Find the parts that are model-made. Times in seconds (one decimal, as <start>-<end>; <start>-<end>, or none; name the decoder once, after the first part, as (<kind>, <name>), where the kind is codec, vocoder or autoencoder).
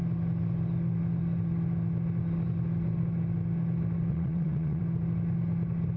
4.1-4.8 (vocoder, WaveNeXt)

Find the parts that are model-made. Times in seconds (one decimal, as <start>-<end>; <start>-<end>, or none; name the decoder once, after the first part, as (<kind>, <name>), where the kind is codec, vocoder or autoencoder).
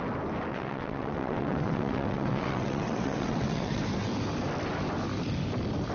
0.5-3.8 (vocoder, WaveNeXt)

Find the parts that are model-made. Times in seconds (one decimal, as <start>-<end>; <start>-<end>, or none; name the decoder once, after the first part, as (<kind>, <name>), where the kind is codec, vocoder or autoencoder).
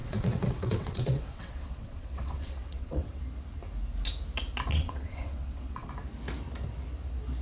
0.0-3.2 (vocoder, WaveNeXt); 4.7-5.9